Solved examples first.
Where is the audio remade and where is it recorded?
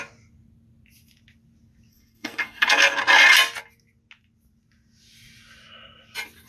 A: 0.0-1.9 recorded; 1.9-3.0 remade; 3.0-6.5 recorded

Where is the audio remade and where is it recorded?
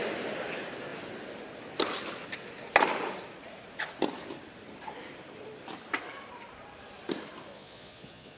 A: 0.0-7.5 recorded; 7.5-8.4 remade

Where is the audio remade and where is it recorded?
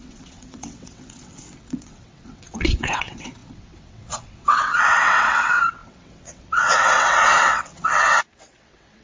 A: 0.0-9.0 remade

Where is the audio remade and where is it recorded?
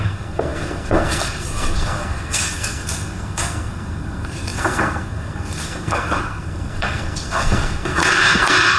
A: 0.0-8.8 remade